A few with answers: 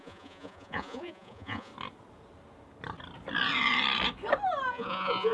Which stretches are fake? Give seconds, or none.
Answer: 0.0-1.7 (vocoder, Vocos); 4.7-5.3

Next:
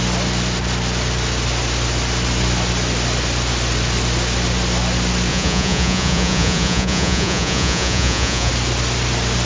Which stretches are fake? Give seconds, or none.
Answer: 5.3-8.5 (vocoder, Vocos)

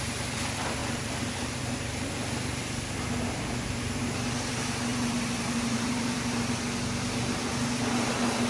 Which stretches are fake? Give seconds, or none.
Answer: 0.8-2.1 (vocoder, BigVGAN v2); 4.9-6.4

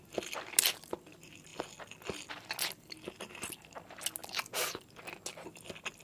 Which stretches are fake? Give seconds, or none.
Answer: none

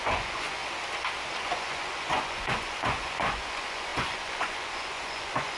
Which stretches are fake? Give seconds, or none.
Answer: 0.0-0.6 (vocoder, Vocos); 1.4-5.6

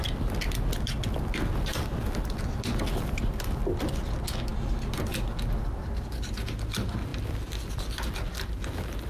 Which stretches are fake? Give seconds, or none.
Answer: none